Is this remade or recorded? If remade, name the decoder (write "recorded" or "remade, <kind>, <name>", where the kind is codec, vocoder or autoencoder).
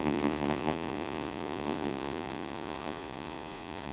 remade, vocoder, Vocos